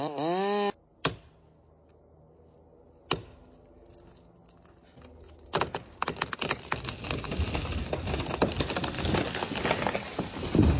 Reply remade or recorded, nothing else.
recorded